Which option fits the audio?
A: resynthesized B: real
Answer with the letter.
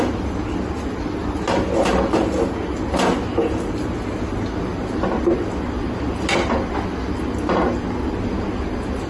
B